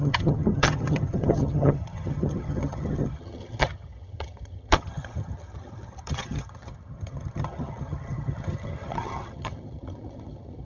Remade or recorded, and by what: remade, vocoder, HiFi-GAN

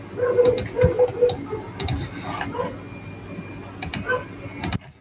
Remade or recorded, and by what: recorded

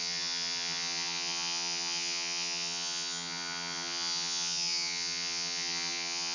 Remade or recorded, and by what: remade, vocoder, HiFi-GAN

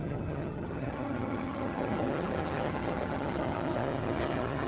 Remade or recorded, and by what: remade, vocoder, HiFi-GAN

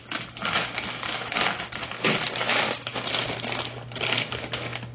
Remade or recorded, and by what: recorded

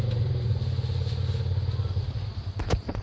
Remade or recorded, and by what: recorded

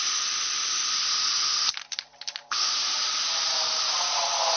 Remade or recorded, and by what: recorded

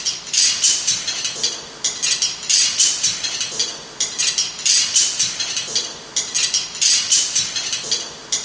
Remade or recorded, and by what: recorded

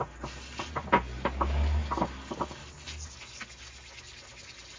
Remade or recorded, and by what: recorded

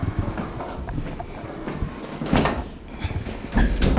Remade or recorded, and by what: recorded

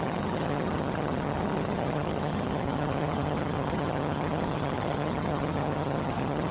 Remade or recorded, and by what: remade, vocoder, HiFi-GAN